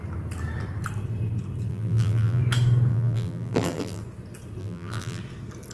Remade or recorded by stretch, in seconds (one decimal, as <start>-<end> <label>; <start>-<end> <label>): 0.0-1.7 recorded; 1.7-2.4 remade; 2.4-2.9 recorded; 2.9-4.0 remade; 4.0-4.6 recorded; 4.6-5.2 remade; 5.2-5.7 recorded